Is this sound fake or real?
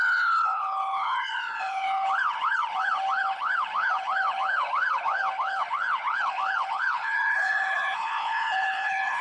fake